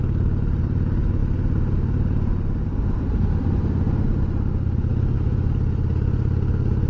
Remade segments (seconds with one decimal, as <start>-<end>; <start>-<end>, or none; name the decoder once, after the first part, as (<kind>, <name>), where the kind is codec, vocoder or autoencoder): 4.9-5.5 (autoencoder, DAC-VAE)